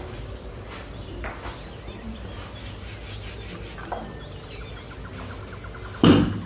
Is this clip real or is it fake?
real